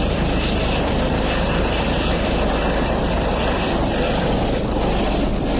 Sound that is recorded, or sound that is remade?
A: remade